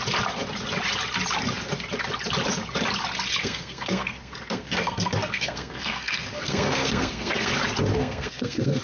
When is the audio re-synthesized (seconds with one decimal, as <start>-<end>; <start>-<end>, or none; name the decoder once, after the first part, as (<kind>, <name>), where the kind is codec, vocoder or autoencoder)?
3.4-7.5 (codec, SNAC); 7.9-8.8